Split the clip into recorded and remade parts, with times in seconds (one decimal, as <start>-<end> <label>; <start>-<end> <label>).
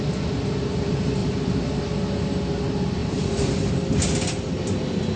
0.0-1.2 recorded; 1.2-1.8 remade; 1.8-3.0 recorded; 3.0-3.7 remade; 3.7-5.2 recorded